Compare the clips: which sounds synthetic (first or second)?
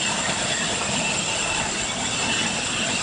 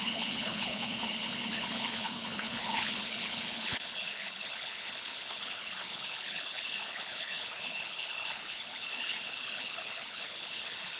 second